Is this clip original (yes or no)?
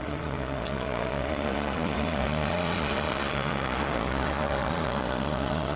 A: no